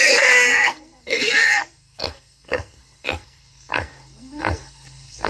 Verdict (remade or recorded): remade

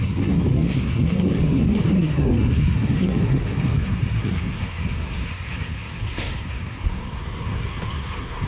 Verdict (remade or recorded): remade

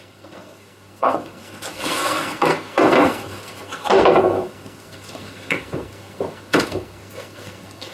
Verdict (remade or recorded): remade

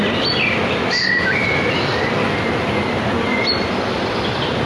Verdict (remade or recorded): recorded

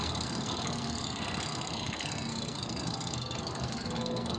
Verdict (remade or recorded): remade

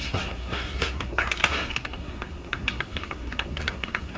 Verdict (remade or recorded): remade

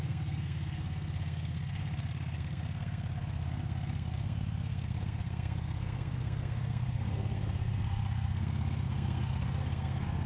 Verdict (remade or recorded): remade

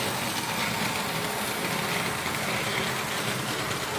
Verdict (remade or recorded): recorded